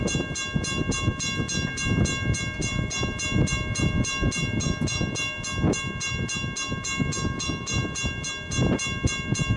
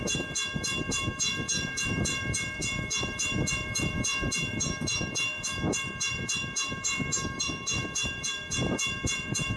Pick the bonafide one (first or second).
first